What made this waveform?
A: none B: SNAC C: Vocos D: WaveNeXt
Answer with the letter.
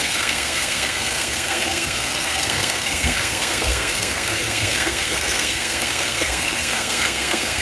B